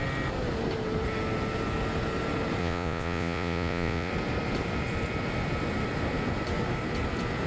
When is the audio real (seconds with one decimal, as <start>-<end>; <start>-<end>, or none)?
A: 0.0-2.6; 4.1-7.5